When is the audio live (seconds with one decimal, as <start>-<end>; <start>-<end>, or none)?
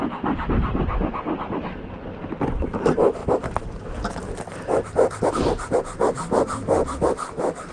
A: 0.0-3.2; 5.3-6.8